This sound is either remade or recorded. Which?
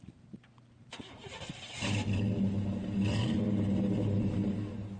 recorded